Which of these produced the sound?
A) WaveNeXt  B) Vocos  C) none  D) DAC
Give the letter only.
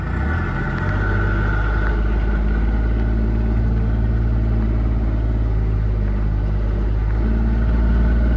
C